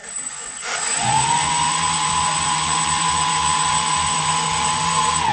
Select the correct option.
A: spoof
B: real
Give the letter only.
A